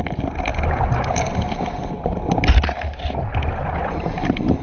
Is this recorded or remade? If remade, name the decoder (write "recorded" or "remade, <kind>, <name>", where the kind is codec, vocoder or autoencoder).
recorded